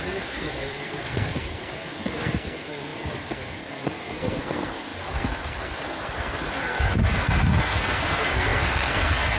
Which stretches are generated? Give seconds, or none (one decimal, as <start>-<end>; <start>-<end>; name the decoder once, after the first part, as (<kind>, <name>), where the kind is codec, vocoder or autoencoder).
0.0-9.4 (codec, SNAC)